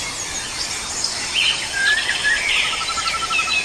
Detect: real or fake real